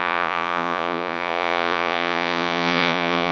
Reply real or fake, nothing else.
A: fake